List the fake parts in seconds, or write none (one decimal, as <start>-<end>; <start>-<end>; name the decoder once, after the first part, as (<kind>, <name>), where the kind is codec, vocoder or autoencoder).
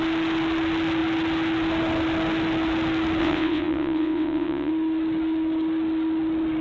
3.2-4.7 (vocoder, WaveNeXt)